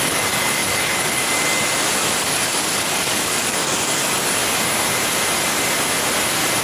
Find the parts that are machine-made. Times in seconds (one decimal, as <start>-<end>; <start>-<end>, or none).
0.0-1.3; 2.2-4.4